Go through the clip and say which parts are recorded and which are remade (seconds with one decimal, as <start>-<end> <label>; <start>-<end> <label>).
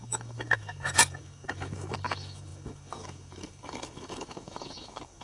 0.0-5.2 remade